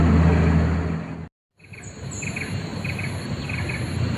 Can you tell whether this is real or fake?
real